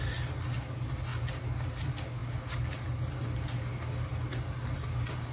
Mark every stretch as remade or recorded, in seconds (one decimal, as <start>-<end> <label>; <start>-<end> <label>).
0.0-5.3 recorded